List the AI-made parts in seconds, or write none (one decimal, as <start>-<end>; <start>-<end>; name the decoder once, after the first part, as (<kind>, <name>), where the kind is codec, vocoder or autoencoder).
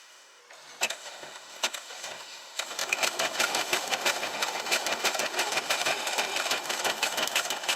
0.0-0.4 (autoencoder, DAC-VAE); 0.9-7.8